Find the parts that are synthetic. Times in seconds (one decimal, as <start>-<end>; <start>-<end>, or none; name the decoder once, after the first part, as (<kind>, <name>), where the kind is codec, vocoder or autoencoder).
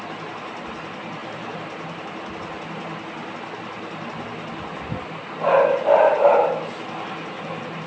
1.2-2.3 (vocoder, BigVGAN v2)